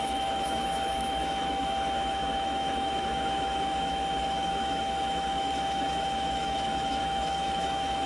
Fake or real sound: fake